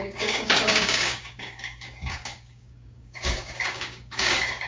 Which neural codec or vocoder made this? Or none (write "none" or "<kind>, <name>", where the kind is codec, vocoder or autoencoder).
codec, DAC